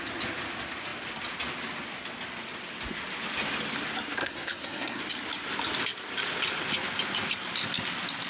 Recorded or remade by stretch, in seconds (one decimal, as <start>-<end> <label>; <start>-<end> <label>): 0.0-4.2 recorded; 4.2-5.0 remade; 5.0-8.3 recorded